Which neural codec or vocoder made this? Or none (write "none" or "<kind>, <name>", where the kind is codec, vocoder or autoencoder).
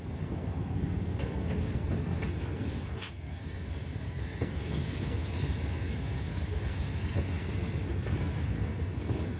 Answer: codec, SNAC